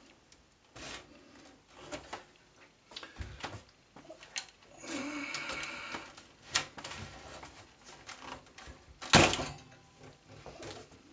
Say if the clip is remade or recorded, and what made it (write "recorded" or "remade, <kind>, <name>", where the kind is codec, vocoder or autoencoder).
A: recorded